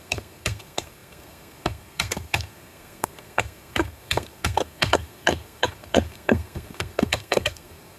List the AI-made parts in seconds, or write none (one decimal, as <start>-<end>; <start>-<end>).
0.0-8.0